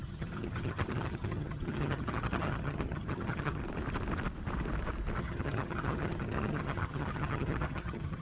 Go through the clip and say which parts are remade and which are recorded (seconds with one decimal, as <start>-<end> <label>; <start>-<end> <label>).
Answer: 0.0-3.6 remade; 3.6-5.2 recorded; 5.2-8.2 remade